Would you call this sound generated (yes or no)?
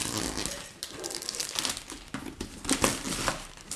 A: no